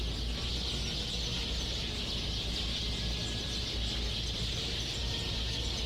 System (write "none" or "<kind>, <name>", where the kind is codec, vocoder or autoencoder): none